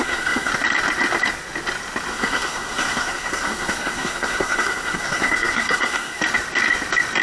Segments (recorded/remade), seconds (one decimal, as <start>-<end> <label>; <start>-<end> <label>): 0.0-0.5 remade; 0.5-2.1 recorded; 2.1-6.2 remade; 6.2-7.2 recorded